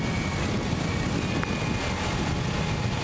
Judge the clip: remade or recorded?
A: recorded